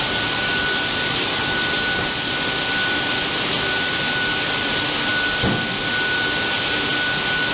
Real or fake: real